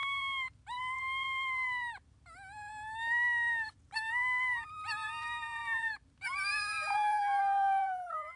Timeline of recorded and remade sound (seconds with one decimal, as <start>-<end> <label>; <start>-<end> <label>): 0.0-2.7 remade; 2.7-4.1 recorded; 4.1-8.4 remade

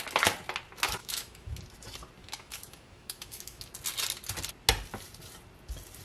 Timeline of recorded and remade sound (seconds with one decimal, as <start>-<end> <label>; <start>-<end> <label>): 0.0-1.0 recorded; 1.0-1.6 remade; 1.6-2.2 recorded; 2.2-3.6 remade; 3.6-6.0 recorded

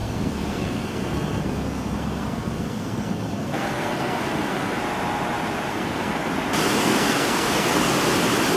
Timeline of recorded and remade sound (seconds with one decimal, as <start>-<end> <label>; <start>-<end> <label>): 0.0-4.8 remade; 4.8-5.7 recorded; 5.7-6.3 remade; 6.3-6.8 recorded; 6.8-7.9 remade; 7.9-8.6 recorded

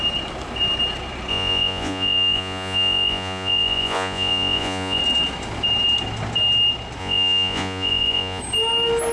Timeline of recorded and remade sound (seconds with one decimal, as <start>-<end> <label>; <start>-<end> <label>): 0.0-1.3 recorded; 1.3-5.0 remade; 5.0-7.0 recorded; 7.0-8.4 remade; 8.4-9.1 recorded